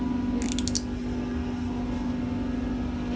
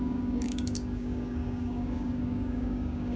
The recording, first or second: first